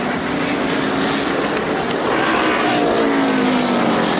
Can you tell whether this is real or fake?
real